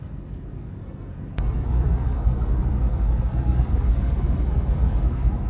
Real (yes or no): no